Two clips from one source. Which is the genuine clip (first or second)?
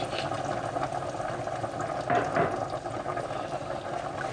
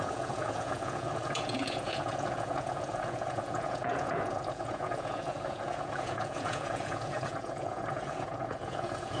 first